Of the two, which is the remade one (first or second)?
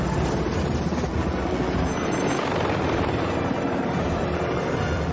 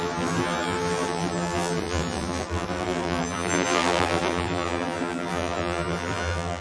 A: second